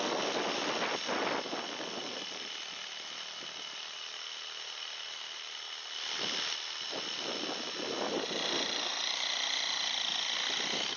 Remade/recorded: recorded